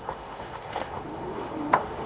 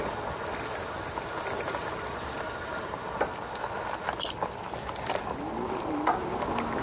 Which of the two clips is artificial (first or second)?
first